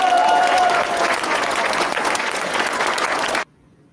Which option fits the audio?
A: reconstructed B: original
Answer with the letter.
A